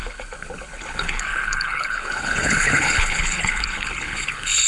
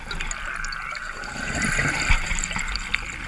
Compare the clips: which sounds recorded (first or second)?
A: second